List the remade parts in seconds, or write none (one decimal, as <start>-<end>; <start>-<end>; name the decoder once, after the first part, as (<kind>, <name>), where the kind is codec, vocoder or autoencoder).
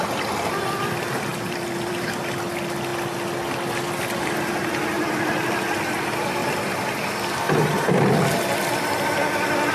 1.3-2.2 (vocoder, BigVGAN v2); 6.4-7.1